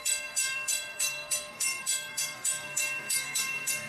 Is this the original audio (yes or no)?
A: no